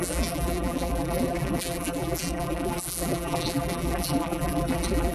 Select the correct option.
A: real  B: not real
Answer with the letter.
B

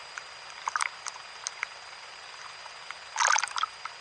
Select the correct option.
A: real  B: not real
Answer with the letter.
A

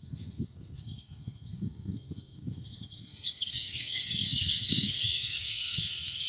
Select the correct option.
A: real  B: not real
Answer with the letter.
B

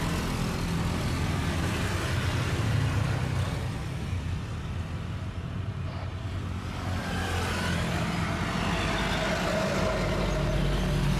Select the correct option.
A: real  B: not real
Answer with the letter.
A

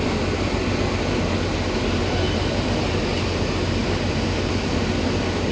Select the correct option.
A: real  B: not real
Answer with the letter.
A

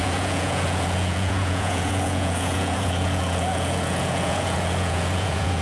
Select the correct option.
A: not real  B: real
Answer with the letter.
A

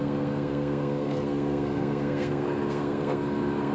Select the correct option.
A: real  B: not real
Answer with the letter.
B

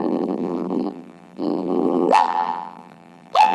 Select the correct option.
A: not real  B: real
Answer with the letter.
A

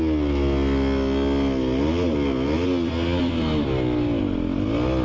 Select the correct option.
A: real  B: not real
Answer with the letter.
A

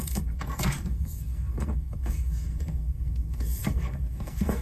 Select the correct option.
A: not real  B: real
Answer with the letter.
A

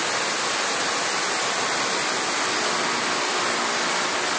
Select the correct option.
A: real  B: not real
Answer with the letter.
A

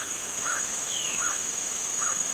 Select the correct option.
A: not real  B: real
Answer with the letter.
A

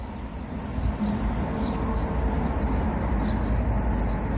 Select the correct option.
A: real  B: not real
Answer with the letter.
A